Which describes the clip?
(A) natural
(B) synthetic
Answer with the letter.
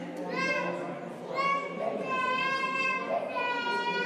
A